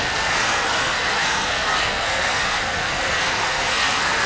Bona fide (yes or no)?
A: no